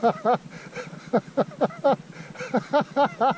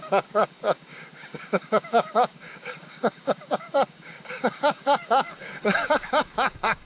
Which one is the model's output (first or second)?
second